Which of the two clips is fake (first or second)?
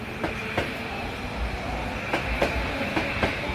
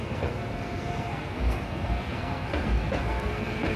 second